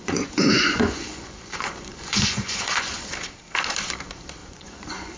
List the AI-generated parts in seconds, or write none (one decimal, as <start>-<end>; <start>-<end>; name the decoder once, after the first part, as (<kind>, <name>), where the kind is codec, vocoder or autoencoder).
0.0-3.1 (vocoder, Vocos); 4.4-5.2